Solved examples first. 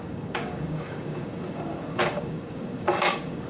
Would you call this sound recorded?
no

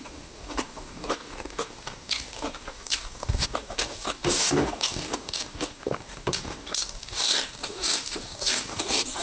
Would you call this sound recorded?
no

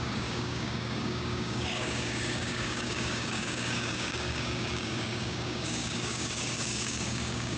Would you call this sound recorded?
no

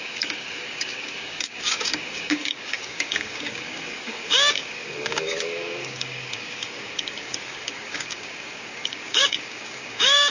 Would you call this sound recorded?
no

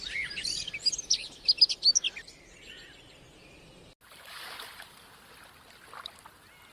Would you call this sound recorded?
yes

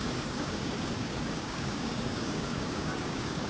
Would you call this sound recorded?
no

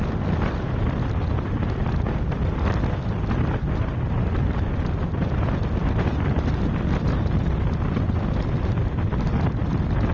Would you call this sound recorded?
yes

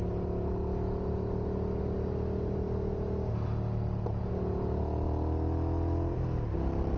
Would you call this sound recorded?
yes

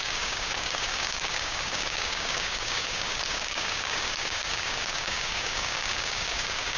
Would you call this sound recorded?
no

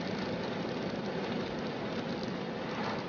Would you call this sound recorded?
yes